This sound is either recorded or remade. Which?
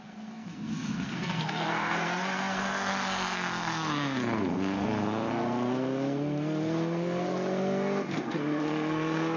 remade